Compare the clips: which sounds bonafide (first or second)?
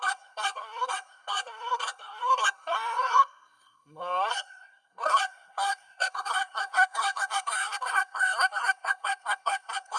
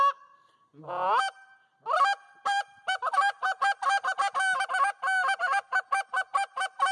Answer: second